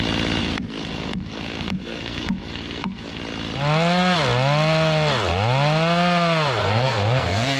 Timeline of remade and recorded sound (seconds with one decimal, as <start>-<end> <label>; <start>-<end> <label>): 0.0-0.4 recorded; 0.4-3.2 remade; 3.2-6.6 recorded; 6.6-7.6 remade

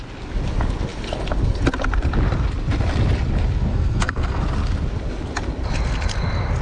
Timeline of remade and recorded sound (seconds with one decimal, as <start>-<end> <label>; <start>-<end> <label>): 0.0-3.7 recorded; 3.7-4.4 remade; 4.4-6.6 recorded